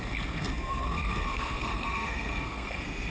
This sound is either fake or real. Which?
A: fake